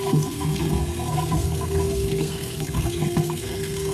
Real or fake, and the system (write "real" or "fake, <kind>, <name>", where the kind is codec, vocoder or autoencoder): fake, codec, SNAC